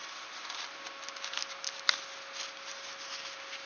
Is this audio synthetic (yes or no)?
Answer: no